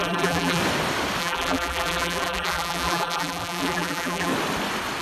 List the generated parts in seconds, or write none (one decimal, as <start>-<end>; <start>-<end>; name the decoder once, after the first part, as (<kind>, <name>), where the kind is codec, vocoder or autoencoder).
0.0-0.6 (vocoder, BigVGAN v2); 1.2-4.3